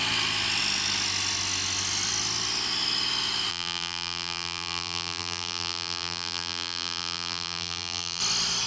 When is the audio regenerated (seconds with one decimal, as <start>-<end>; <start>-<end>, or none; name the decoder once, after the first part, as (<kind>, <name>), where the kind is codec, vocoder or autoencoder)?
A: 3.5-8.2 (vocoder, BigVGAN v2)